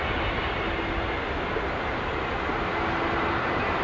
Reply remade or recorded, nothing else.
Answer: recorded